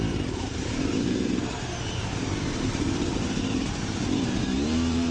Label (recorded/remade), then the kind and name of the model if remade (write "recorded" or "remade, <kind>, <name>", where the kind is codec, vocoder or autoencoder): remade, vocoder, BigVGAN v2